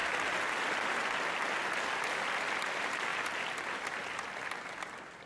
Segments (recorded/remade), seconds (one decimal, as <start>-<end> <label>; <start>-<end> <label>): 0.0-5.3 recorded